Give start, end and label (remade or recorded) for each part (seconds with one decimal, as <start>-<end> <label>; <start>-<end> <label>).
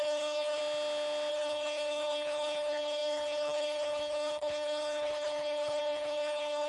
0.0-0.6 remade; 0.6-1.3 recorded; 1.3-6.7 remade